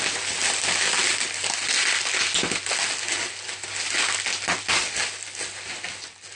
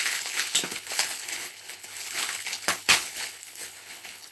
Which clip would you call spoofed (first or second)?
second